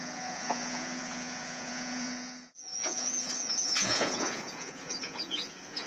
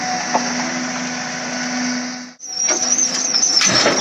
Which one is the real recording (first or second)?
second